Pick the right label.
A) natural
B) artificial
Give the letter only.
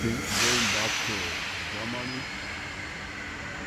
A